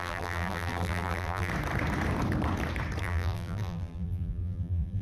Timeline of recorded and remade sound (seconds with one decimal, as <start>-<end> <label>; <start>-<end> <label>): 0.0-1.5 remade; 1.5-3.0 recorded; 3.0-5.0 remade